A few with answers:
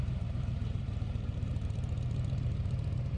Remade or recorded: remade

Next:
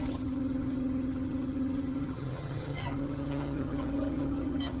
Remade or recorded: remade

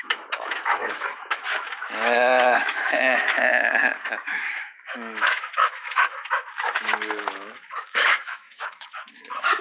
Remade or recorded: remade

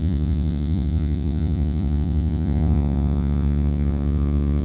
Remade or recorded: remade